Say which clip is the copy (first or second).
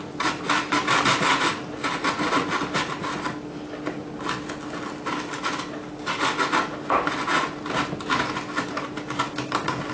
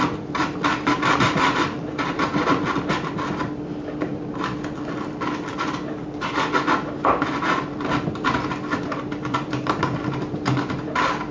second